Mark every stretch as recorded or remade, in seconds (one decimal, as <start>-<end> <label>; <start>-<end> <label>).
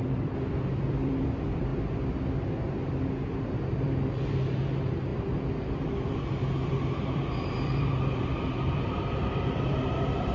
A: 0.0-1.7 remade; 1.7-3.7 recorded; 3.7-10.3 remade